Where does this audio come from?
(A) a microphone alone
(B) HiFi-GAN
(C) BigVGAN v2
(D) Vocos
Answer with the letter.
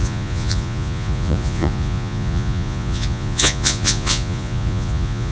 D